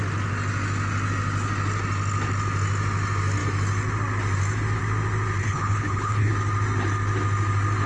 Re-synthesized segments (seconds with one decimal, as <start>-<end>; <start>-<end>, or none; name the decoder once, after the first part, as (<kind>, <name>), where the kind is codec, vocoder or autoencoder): 5.4-6.3 (codec, HILCodec)